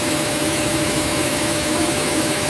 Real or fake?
fake